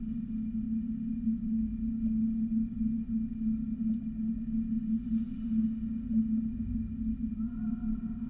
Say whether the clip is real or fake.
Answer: real